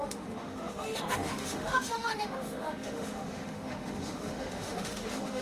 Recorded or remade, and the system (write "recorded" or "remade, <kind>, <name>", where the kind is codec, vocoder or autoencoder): remade, autoencoder, DAC-VAE